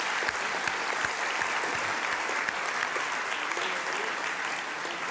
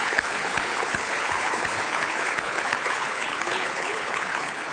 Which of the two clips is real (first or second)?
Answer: first